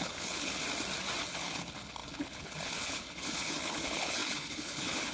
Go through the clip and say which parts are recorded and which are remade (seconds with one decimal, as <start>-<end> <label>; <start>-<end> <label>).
0.0-0.6 remade; 0.6-1.2 recorded; 1.2-5.1 remade